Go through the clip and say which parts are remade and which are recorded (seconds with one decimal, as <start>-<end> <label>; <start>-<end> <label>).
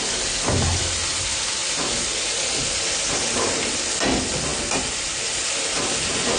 0.0-6.4 recorded